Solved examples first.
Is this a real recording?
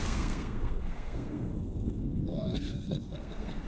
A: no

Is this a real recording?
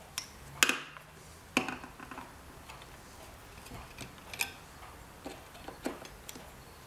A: yes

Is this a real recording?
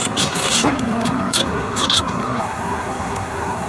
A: no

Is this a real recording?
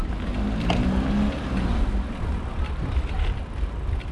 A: yes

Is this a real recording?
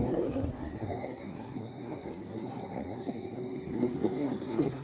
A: no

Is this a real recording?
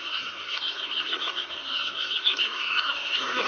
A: no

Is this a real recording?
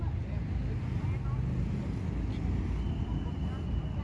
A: yes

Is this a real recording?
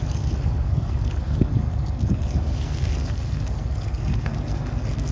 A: no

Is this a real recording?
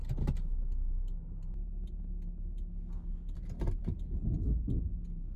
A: yes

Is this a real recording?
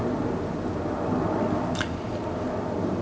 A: yes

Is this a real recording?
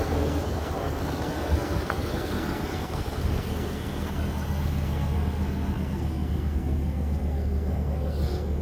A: no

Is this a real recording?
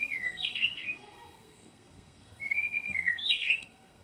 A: no